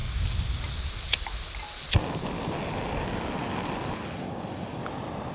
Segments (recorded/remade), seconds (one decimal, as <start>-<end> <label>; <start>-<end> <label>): 0.0-5.3 recorded